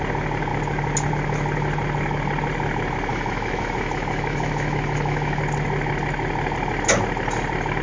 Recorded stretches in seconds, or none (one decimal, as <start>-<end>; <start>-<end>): 0.0-3.1; 5.4-7.8